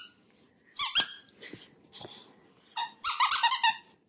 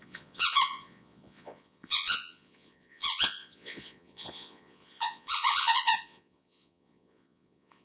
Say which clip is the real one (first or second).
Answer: first